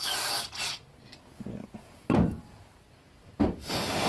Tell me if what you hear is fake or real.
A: real